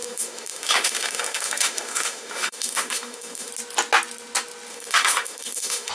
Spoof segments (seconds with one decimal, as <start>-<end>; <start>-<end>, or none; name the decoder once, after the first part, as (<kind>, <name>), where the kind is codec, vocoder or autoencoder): 0.0-3.5 (autoencoder, DAC-VAE); 4.7-5.9